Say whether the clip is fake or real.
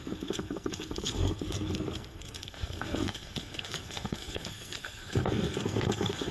fake